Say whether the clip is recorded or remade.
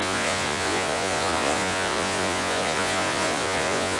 remade